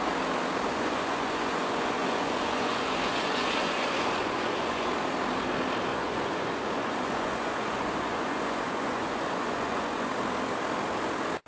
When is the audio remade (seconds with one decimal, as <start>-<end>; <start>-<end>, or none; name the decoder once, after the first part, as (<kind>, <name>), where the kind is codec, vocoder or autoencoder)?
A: 0.7-4.9 (vocoder, Vocos); 5.9-10.1